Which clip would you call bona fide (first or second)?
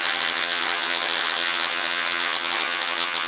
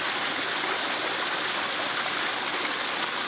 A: second